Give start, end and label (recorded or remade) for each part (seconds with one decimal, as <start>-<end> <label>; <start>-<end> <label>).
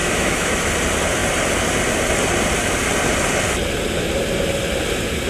0.0-0.7 remade; 0.7-5.3 recorded